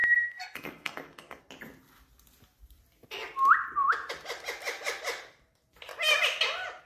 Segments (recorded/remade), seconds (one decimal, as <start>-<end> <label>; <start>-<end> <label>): 0.0-1.4 remade; 1.4-6.9 recorded